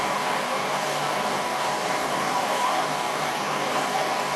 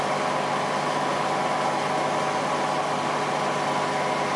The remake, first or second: first